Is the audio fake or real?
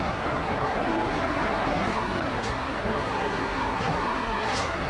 fake